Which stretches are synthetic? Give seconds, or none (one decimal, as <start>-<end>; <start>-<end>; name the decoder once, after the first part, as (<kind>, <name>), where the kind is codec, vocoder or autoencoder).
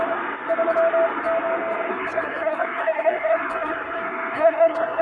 1.9-5.0 (codec, SNAC)